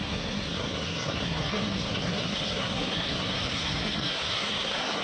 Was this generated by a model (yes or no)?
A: yes